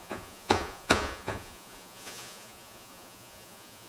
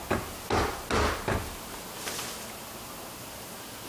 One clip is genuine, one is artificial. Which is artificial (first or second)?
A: first